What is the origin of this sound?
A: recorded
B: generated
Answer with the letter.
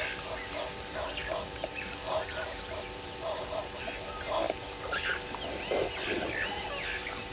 A